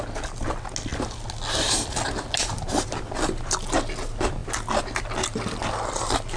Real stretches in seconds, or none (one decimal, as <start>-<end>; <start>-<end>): 0.0-6.4